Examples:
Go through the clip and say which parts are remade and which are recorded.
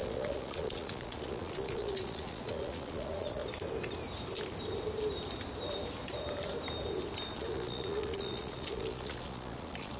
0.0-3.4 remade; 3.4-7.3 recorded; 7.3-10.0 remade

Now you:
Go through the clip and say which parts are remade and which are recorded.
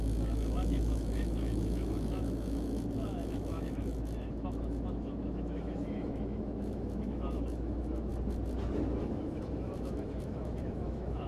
0.0-8.1 remade; 8.1-9.0 recorded; 9.0-11.3 remade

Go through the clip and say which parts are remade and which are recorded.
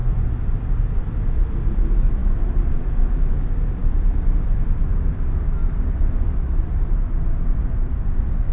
0.0-5.6 recorded; 5.6-6.9 remade; 6.9-8.5 recorded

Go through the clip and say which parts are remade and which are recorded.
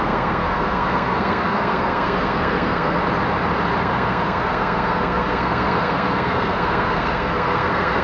0.0-3.0 remade; 3.0-3.8 recorded; 3.8-8.0 remade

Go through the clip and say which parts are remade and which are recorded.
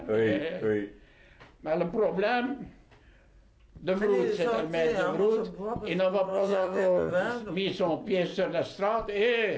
0.0-6.3 recorded; 6.3-7.1 remade; 7.1-9.6 recorded